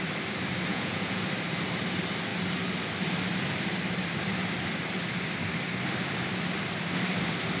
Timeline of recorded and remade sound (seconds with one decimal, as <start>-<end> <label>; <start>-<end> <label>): 0.0-0.7 recorded; 0.7-1.2 remade; 1.2-7.6 recorded

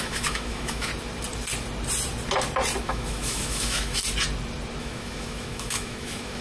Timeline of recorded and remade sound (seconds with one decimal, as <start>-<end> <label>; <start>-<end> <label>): 0.0-0.9 remade; 0.9-2.8 recorded; 2.8-4.0 remade; 4.0-4.8 recorded; 4.8-6.4 remade

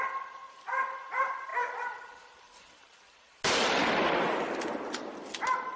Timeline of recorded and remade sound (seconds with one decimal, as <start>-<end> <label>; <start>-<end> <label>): 0.0-5.8 recorded